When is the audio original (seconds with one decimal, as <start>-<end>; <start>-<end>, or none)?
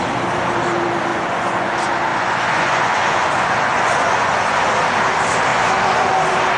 0.0-1.1; 1.7-2.1; 4.7-5.5; 6.1-6.6